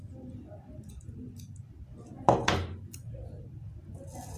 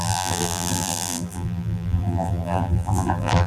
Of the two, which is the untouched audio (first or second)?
first